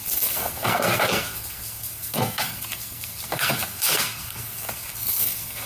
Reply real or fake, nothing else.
fake